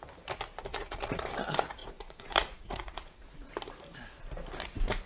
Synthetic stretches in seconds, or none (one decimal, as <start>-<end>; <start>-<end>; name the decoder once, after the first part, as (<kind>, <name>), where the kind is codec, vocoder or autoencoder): 0.7-1.3 (vocoder, Vocos); 1.8-3.5